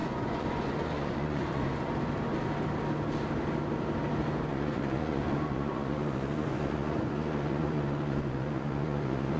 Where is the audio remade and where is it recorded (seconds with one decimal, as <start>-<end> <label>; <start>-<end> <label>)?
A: 0.0-1.9 remade; 1.9-4.5 recorded; 4.5-9.4 remade